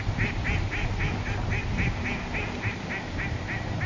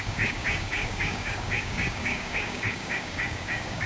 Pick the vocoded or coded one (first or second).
second